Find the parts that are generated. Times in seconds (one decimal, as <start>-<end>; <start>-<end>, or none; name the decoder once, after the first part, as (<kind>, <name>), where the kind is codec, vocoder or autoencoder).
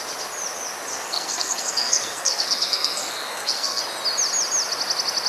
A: 0.9-3.8 (codec, SNAC)